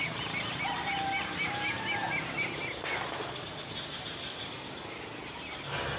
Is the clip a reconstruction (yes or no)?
no